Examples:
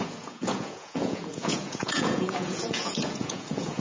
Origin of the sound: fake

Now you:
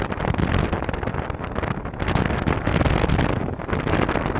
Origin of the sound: real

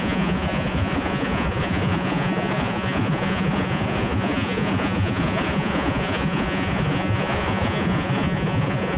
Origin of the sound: fake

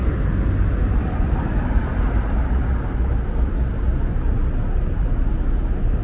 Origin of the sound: real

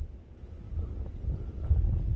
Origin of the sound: real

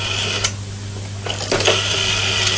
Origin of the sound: real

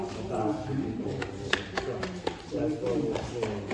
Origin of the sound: real